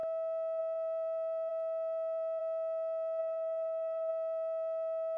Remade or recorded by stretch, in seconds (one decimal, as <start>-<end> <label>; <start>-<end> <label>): 0.0-3.2 recorded; 3.2-4.1 remade; 4.1-5.2 recorded